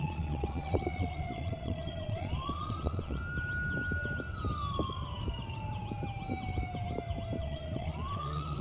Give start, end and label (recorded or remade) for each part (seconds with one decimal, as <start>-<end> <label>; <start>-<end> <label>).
0.0-3.2 remade; 3.2-7.4 recorded; 7.4-8.6 remade